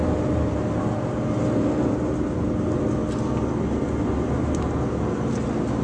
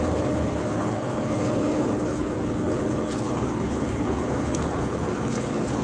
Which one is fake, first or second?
second